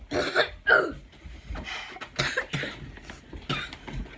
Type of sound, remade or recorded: recorded